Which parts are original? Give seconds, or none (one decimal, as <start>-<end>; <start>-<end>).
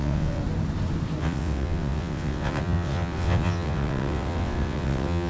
0.4-1.2